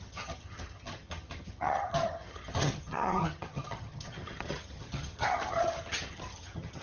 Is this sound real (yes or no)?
no